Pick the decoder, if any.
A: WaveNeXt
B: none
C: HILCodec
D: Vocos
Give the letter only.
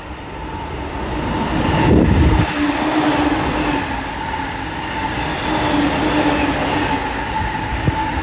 B